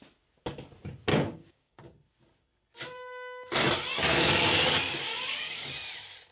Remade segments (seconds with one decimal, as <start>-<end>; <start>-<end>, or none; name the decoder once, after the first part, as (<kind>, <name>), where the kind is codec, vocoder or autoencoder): 1.1-1.8 (codec, DAC); 5.1-5.7